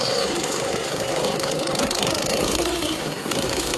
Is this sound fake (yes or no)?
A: yes